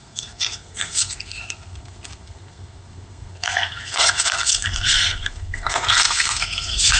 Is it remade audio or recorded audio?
remade